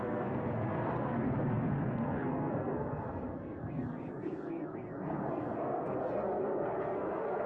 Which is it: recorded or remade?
remade